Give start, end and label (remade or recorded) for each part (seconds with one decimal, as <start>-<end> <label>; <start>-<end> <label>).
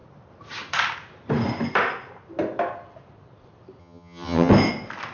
0.0-3.8 recorded; 3.8-4.5 remade; 4.5-5.1 recorded